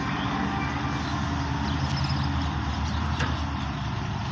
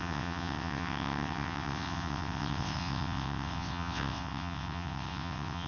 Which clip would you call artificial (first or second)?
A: second